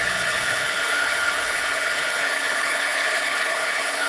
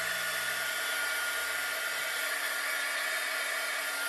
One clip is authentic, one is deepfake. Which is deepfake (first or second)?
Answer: first